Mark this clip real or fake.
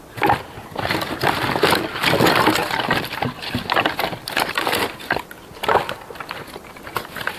real